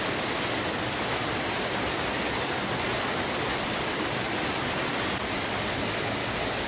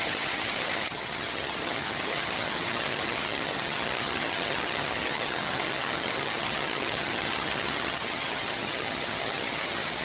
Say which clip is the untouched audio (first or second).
first